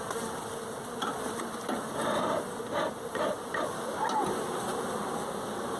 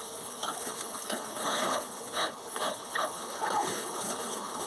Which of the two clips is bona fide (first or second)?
first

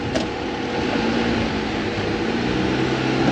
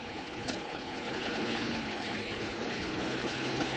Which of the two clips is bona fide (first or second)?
first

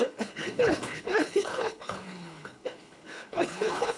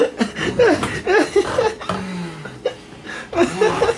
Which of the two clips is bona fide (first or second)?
second